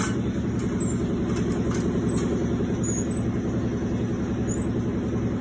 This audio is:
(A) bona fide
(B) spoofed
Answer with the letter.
A